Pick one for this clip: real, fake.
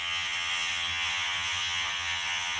fake